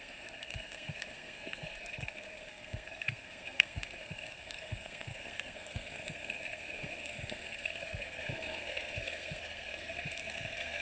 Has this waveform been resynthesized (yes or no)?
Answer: yes